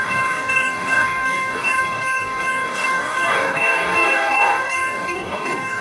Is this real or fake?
fake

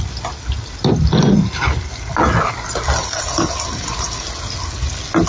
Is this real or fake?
real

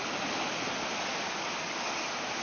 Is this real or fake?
real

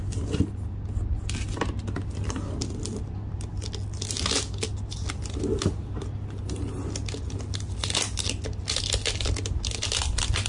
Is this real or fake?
real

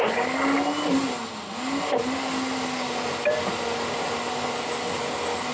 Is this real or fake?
real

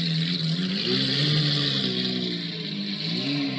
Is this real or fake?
real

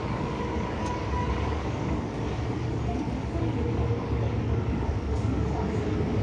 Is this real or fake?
fake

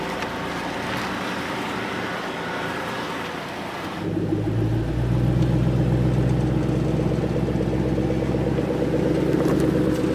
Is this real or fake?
real